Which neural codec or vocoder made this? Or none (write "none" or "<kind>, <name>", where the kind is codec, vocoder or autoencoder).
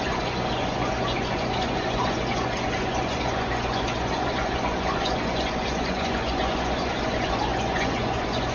vocoder, Vocos